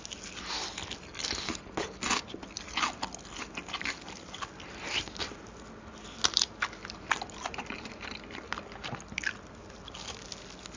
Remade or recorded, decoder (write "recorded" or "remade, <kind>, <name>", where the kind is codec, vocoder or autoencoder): recorded